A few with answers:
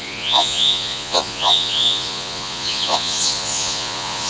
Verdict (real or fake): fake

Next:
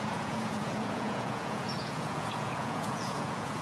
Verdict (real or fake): fake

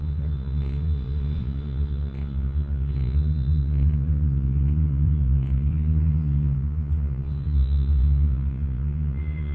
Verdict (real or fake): fake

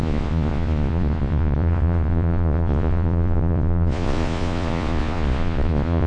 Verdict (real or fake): fake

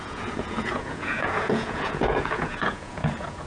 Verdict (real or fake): fake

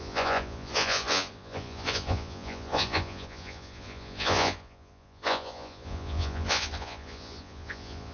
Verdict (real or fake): fake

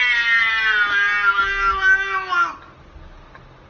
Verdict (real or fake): real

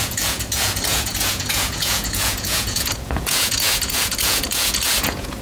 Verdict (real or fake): fake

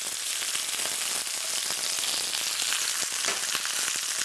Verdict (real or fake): real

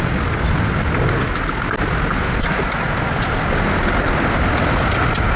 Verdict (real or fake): real